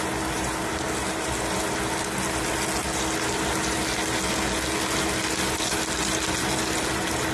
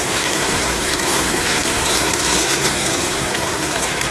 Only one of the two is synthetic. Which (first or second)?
second